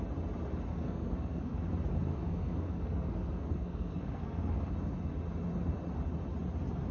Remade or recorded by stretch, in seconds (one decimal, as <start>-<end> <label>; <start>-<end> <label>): 0.0-0.7 recorded; 0.7-1.7 remade; 1.7-2.1 recorded; 2.1-4.7 remade; 4.7-6.9 recorded